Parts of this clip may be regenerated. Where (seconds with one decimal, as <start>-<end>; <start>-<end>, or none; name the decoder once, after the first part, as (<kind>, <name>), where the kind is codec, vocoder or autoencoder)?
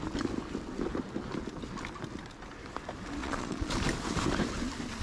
3.2-3.7 (vocoder, Vocos)